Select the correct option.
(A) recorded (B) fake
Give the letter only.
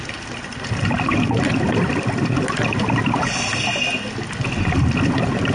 A